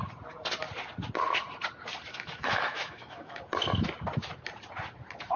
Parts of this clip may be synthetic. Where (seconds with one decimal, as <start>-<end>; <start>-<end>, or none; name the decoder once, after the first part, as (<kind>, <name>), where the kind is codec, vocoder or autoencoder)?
2.1-3.4 (autoencoder, DAC-VAE)